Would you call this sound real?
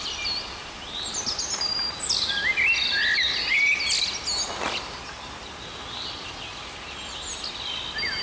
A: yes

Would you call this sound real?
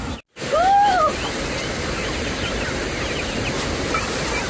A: yes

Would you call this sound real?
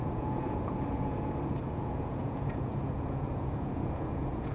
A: no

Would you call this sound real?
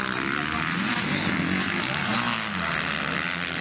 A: yes